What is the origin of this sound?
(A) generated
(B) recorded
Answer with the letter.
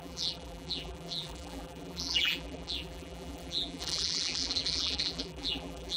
A